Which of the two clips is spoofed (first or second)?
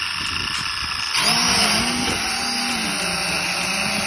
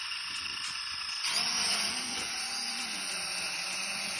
second